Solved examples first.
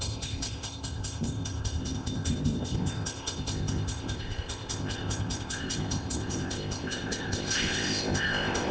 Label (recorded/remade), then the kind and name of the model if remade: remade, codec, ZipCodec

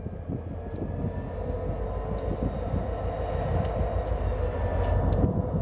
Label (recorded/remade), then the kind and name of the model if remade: recorded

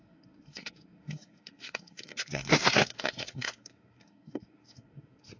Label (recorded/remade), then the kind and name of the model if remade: remade, codec, SNAC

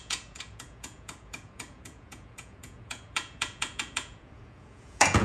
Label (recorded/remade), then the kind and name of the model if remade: remade, vocoder, Vocos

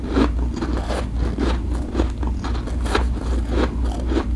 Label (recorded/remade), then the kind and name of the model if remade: recorded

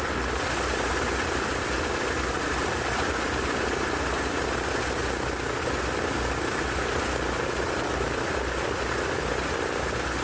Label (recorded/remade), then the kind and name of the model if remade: recorded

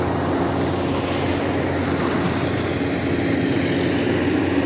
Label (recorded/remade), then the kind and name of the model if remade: recorded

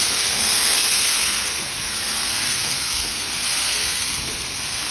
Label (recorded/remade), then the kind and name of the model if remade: remade, codec, SNAC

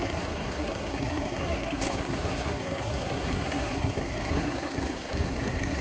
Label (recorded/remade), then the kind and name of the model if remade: remade, codec, SNAC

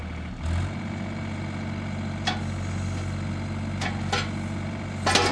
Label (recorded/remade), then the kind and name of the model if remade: recorded